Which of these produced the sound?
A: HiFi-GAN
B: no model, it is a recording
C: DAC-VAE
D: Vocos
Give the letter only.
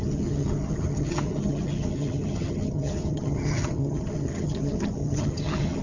A